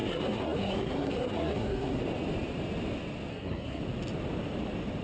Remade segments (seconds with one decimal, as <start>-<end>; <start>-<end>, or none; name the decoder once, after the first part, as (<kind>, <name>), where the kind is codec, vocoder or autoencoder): 0.0-2.0 (codec, SNAC); 3.3-3.8